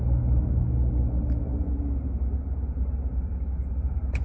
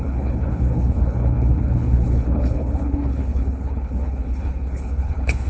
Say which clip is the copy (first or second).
second